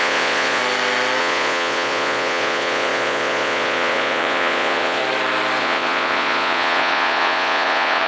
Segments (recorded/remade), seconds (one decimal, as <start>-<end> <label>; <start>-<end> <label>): 0.0-0.6 remade; 0.6-1.2 recorded; 1.2-5.0 remade; 5.0-5.6 recorded; 5.6-8.1 remade